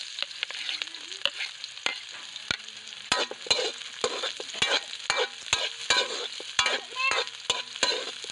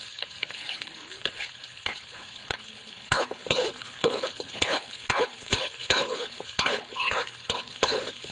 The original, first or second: first